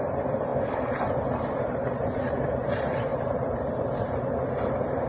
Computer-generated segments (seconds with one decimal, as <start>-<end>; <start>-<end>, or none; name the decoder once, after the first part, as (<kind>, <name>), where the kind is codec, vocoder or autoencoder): 0.0-0.5 (vocoder, BigVGAN v2); 1.6-5.1